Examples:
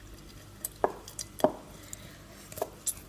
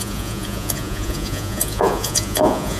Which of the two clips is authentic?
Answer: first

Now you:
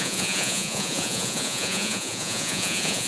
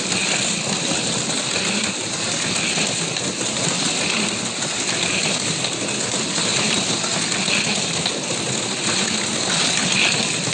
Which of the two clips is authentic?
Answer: second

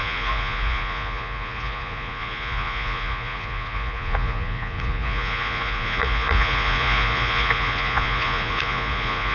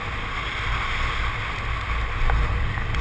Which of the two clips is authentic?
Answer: second